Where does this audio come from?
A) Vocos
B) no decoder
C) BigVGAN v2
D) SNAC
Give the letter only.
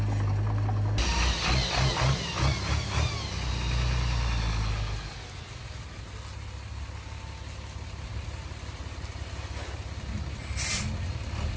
B